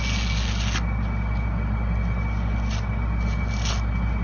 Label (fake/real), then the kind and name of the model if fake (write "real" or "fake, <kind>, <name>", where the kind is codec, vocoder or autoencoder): real